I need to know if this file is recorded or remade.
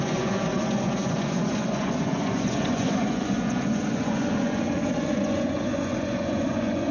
remade